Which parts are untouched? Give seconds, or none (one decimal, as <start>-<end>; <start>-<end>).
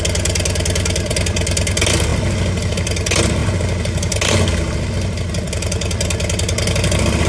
0.0-7.3